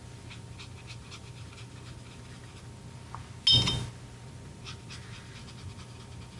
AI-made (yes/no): no